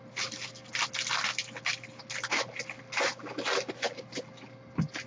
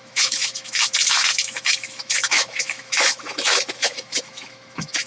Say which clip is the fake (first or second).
second